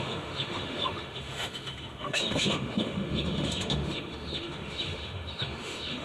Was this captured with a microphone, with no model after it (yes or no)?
no